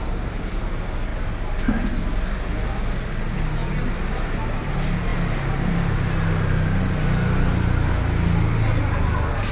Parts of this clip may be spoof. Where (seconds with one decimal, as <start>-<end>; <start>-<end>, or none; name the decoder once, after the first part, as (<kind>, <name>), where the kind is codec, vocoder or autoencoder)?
none